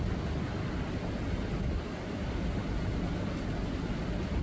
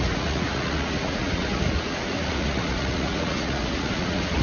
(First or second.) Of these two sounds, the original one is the first